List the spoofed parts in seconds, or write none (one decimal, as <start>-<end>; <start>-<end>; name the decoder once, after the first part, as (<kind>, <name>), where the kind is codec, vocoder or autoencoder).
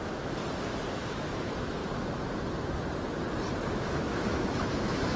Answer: 0.0-0.4 (autoencoder, DAC-VAE); 0.9-1.8; 3.7-5.2